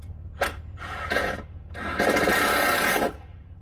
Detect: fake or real fake